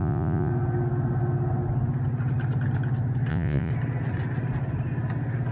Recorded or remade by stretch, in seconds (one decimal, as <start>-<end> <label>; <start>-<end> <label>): 0.0-0.5 remade; 0.5-3.3 recorded; 3.3-3.7 remade; 3.7-5.5 recorded